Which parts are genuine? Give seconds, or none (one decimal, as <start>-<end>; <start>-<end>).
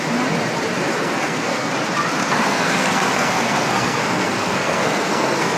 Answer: 0.0-0.9; 1.7-2.2